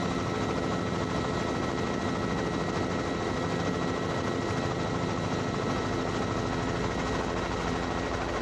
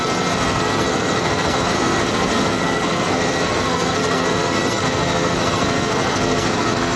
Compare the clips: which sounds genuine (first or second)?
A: first